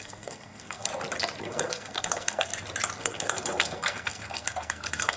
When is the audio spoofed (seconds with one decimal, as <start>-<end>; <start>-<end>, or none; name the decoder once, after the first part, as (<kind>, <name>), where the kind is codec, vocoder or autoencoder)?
0.0-0.9 (codec, SNAC); 1.4-2.5; 3.0-5.2